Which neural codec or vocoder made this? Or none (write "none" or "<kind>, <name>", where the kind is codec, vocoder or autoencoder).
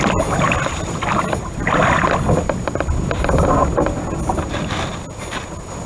none